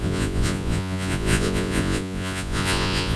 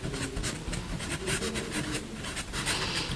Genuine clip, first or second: second